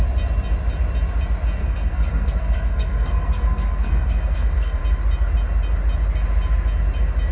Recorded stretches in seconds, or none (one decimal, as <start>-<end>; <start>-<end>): 0.0-1.6; 4.8-7.3